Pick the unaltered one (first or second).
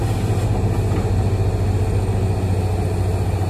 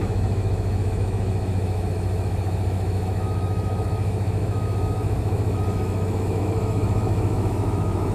first